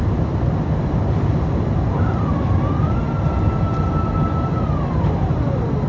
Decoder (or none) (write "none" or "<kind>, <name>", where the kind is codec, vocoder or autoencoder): none